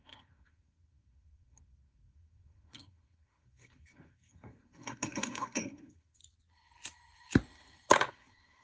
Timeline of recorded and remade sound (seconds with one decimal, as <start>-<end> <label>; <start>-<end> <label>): 0.0-6.2 remade; 6.2-8.1 recorded; 8.1-8.6 remade